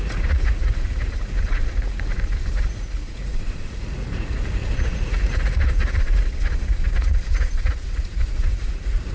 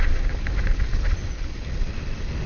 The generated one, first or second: first